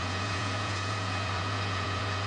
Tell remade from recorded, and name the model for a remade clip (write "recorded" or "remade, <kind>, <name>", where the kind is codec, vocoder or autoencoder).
remade, vocoder, Vocos